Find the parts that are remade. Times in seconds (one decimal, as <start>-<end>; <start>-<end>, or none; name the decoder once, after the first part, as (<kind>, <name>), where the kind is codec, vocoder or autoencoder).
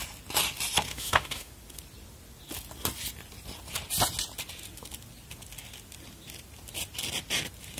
0.9-1.5 (autoencoder, DAC-VAE)